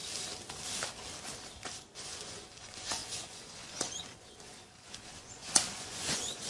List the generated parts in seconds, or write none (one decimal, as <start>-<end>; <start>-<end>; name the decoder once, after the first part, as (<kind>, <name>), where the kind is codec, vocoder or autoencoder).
1.8-6.5 (vocoder, Vocos)